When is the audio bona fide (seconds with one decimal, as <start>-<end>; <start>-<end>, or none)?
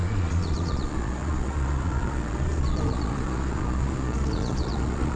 none